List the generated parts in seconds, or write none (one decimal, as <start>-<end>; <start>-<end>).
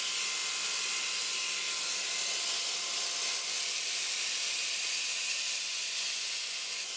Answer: 5.7-7.0